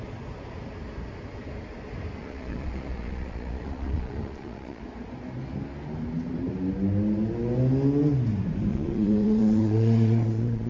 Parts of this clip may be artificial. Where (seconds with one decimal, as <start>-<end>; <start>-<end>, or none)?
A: 2.2-4.8; 8.7-10.7